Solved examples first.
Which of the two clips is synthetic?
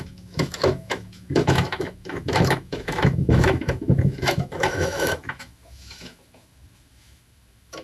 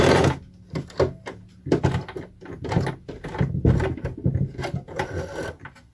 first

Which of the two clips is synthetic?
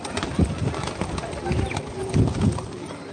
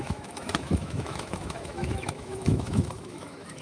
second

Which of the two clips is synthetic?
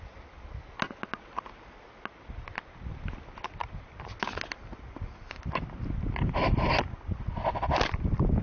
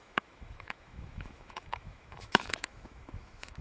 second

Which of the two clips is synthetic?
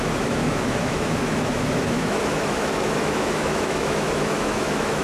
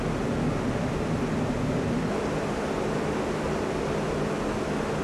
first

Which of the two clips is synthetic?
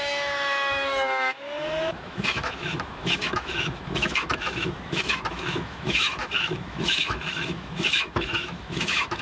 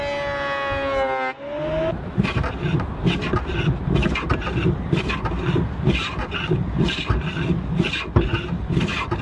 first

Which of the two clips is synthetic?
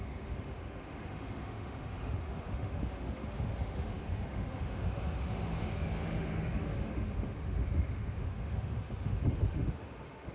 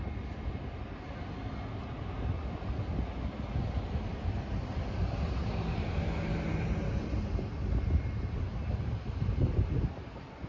first